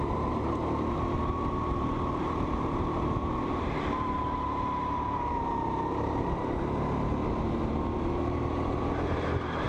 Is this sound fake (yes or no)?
yes